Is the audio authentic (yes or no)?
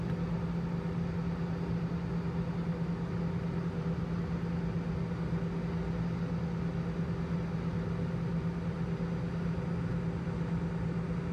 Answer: yes